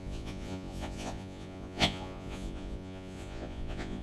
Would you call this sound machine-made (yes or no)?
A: yes